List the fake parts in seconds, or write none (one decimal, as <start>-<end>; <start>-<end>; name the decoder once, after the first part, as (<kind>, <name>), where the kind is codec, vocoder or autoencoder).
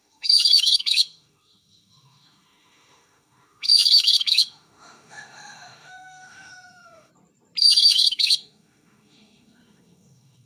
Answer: 0.0-7.1 (autoencoder, DAC-VAE); 7.6-10.5